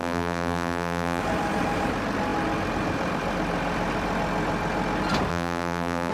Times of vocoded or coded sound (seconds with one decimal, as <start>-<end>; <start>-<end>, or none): 0.0-1.2; 5.3-6.1